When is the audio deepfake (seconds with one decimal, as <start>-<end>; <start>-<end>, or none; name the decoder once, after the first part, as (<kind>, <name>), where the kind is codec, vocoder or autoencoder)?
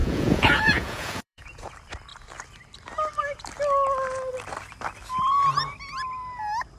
0.0-1.7 (vocoder, Vocos)